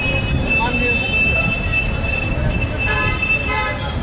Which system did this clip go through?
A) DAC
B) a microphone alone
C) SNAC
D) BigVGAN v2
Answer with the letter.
B